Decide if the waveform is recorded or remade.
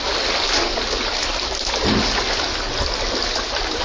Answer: recorded